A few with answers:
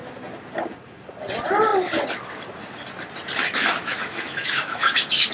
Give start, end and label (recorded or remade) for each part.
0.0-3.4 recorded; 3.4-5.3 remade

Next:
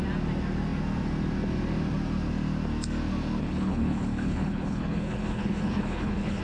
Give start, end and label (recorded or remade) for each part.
0.0-3.4 recorded; 3.4-6.4 remade

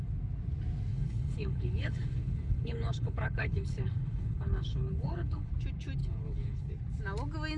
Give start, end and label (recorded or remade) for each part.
0.0-0.9 recorded; 0.9-5.5 remade; 5.5-6.0 recorded; 6.0-6.7 remade; 6.7-7.6 recorded